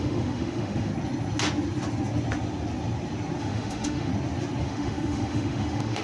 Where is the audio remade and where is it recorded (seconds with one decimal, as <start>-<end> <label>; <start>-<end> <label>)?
0.0-0.9 remade; 0.9-3.4 recorded; 3.4-4.1 remade; 4.1-4.6 recorded; 4.6-6.0 remade

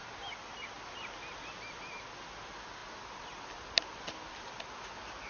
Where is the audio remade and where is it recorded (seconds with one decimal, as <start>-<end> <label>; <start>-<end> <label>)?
0.0-5.3 recorded

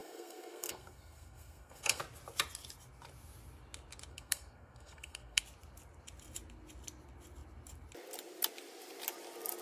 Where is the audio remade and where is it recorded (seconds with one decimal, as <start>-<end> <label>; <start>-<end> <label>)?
0.0-2.0 remade; 2.0-4.1 recorded; 4.1-5.4 remade; 5.4-9.6 recorded

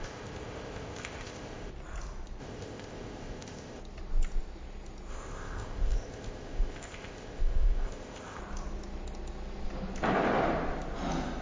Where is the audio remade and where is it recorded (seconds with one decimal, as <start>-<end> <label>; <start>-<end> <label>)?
0.0-1.7 remade; 1.7-2.4 recorded; 2.4-3.8 remade; 3.8-5.1 recorded; 5.1-8.4 remade; 8.4-11.4 recorded

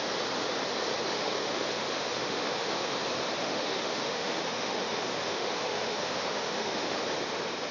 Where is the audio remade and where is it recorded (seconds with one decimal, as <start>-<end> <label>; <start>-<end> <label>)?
0.0-1.1 recorded; 1.1-3.0 remade; 3.0-3.4 recorded; 3.4-7.0 remade; 7.0-7.7 recorded

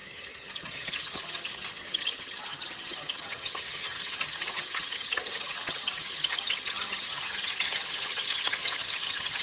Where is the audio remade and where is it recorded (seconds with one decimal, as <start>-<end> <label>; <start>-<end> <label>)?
0.0-9.4 remade